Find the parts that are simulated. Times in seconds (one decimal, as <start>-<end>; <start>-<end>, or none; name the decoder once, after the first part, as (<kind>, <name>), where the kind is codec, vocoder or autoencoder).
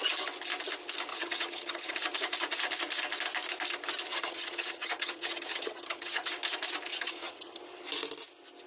1.1-1.9 (vocoder, HiFi-GAN); 4.1-6.3; 6.9-7.6